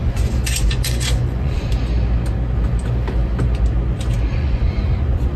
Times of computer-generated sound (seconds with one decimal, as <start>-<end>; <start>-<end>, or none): 0.0-1.7; 4.3-5.4